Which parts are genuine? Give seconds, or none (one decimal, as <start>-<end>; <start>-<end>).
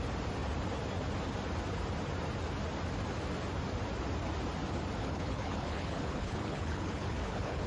0.0-5.0